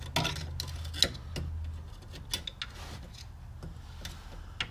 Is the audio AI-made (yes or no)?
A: no